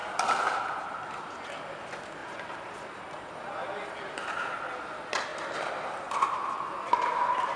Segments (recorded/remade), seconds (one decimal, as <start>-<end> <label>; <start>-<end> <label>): 0.0-0.6 remade; 0.6-7.6 recorded